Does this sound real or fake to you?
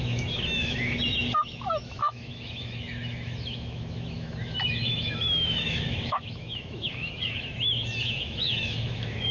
fake